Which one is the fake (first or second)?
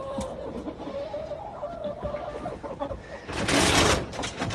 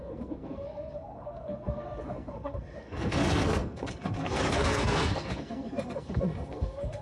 second